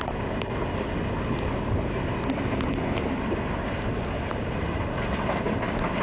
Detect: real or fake real